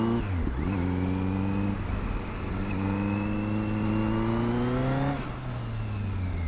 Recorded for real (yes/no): yes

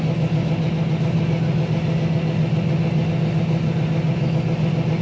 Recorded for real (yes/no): yes